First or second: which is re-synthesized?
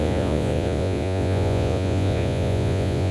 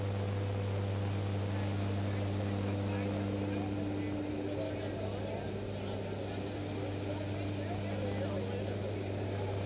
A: first